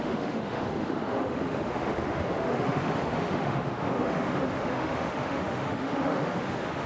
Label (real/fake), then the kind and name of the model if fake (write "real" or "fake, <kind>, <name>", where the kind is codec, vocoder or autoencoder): fake, autoencoder, DAC-VAE